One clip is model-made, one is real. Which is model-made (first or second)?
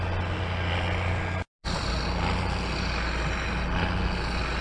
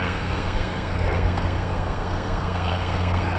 second